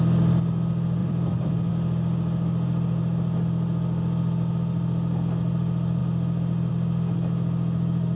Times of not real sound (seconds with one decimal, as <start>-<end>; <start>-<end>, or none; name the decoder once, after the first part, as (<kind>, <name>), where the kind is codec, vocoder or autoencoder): 1.0-1.7 (vocoder, BigVGAN v2)